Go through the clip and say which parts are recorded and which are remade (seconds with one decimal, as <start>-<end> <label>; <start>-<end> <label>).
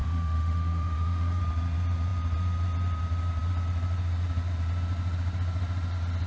0.0-1.4 remade; 1.4-6.3 recorded